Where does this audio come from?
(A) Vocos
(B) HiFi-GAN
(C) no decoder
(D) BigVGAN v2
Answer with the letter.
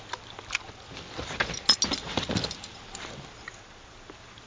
C